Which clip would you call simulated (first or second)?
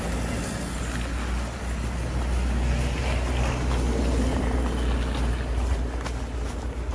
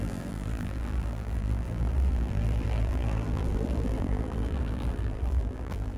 second